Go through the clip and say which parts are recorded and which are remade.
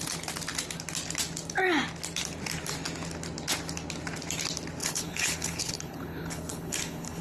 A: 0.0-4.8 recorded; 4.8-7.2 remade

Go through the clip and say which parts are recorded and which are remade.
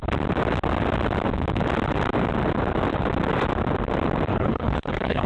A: 0.0-4.3 recorded; 4.3-5.3 remade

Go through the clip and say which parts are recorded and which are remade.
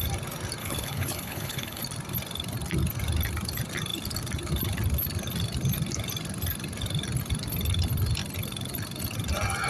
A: 0.0-0.6 recorded; 0.6-1.8 remade; 1.8-9.7 recorded